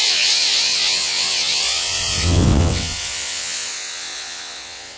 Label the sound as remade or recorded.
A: remade